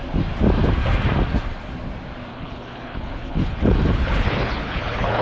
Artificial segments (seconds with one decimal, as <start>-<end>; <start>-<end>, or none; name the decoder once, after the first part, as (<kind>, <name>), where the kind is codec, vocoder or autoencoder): 2.3-5.2 (codec, HILCodec)